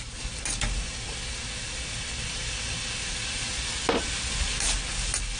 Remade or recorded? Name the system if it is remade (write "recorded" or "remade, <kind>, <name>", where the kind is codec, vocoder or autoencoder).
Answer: recorded